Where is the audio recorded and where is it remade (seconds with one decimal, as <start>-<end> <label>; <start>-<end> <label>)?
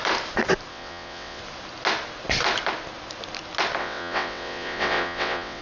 0.0-0.7 recorded; 0.7-1.4 remade; 1.4-3.8 recorded; 3.8-5.6 remade